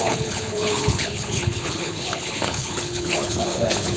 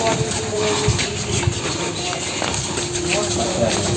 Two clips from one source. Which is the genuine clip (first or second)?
second